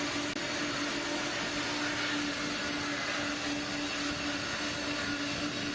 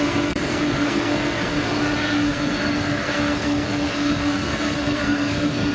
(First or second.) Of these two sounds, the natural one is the first